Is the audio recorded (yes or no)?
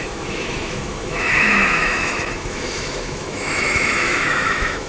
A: no